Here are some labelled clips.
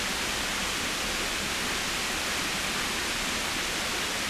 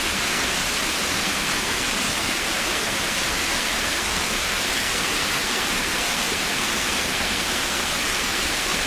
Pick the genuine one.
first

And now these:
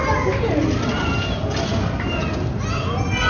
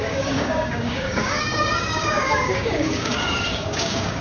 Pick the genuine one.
first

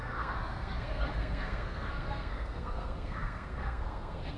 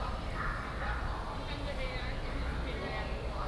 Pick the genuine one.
second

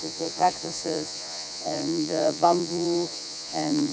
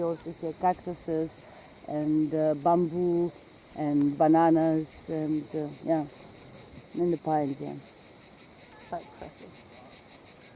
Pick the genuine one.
second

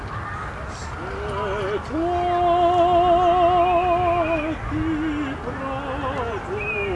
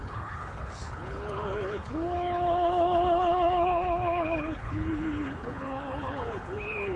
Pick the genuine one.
first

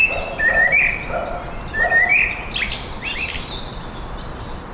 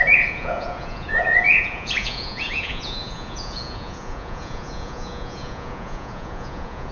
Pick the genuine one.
first